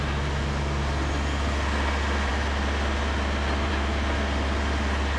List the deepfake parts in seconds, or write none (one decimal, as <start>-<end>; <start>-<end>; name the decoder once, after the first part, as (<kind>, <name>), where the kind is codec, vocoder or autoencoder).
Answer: none